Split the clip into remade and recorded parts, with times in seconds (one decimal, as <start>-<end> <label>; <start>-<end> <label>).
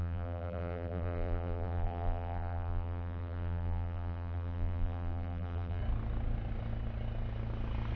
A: 0.0-5.8 remade; 5.8-8.0 recorded